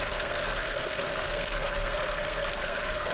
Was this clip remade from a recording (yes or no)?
yes